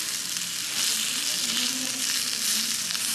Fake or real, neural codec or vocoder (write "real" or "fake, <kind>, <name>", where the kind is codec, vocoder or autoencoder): real